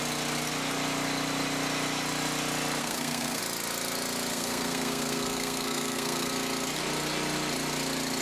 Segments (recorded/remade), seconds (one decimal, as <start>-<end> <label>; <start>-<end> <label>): 0.0-2.8 recorded; 2.8-3.4 remade; 3.4-4.3 recorded; 4.3-6.3 remade; 6.3-8.2 recorded